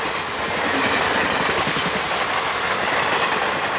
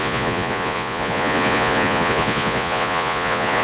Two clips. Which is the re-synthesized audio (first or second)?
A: second